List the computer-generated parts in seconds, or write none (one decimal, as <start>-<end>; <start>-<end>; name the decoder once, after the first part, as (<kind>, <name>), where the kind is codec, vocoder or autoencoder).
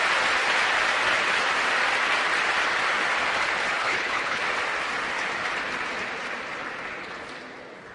3.8-4.4 (codec, HILCodec)